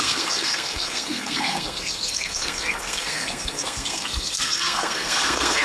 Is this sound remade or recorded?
remade